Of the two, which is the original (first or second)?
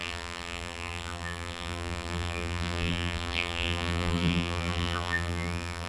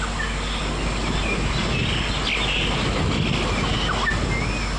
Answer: second